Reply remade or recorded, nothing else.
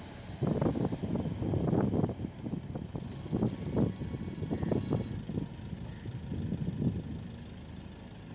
recorded